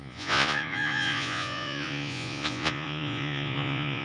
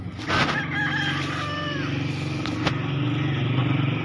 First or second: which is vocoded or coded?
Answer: first